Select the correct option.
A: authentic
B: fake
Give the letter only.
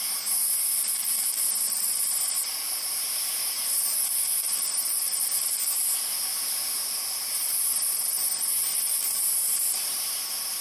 B